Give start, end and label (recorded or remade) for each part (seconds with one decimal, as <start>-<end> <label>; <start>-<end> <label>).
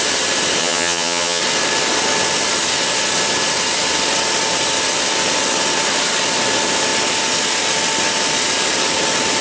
0.0-0.6 recorded; 0.6-1.4 remade; 1.4-9.4 recorded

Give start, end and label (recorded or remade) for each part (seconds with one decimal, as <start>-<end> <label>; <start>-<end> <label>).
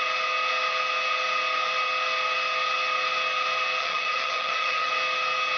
0.0-3.8 recorded; 3.8-4.9 remade; 4.9-5.6 recorded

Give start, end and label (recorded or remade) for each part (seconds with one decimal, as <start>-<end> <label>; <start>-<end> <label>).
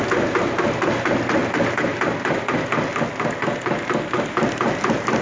0.0-5.2 recorded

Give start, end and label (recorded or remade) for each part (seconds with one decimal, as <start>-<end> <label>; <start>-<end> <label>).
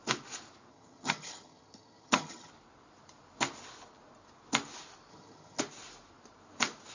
0.0-0.7 recorded; 0.7-2.5 remade; 2.5-5.1 recorded; 5.1-5.6 remade; 5.6-6.9 recorded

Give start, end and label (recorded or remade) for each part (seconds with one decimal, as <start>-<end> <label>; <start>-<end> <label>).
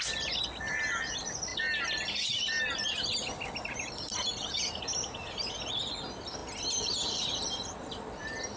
0.0-8.6 recorded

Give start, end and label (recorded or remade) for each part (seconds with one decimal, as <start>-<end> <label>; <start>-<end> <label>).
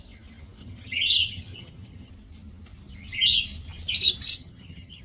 0.0-0.6 recorded; 0.6-2.1 remade; 2.1-4.3 recorded; 4.3-5.0 remade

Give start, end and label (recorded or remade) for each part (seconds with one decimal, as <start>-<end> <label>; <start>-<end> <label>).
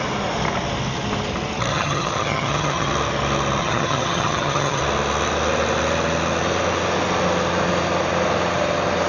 0.0-1.7 recorded; 1.7-2.9 remade; 2.9-3.6 recorded; 3.6-4.8 remade; 4.8-9.1 recorded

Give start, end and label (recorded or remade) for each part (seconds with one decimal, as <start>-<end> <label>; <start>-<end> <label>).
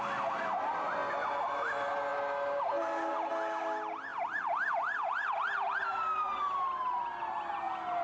0.0-8.0 recorded